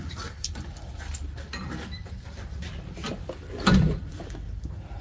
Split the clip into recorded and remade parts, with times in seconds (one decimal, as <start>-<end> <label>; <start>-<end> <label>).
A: 0.0-5.0 recorded